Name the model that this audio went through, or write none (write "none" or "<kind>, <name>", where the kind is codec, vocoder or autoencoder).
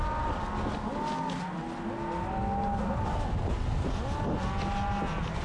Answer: none